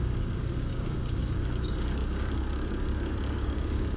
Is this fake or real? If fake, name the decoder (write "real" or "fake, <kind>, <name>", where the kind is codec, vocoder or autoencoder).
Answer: fake, codec, DAC